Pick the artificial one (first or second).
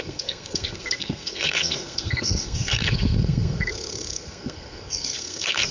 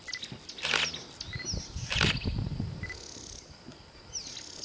first